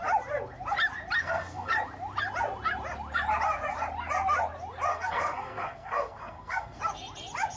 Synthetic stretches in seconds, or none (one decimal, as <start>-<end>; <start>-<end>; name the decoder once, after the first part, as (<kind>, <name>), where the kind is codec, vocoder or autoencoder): 1.2-1.7 (codec, SNAC); 4.9-6.8